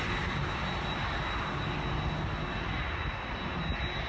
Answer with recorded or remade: recorded